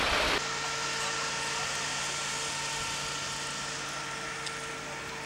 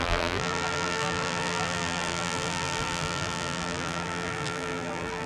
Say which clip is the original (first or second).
first